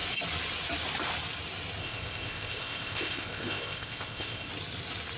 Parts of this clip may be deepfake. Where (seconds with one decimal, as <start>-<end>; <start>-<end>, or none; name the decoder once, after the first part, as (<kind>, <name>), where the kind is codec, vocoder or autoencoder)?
1.8-4.5 (codec, ZipCodec)